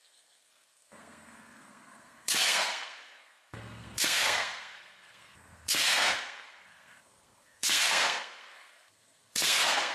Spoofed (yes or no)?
yes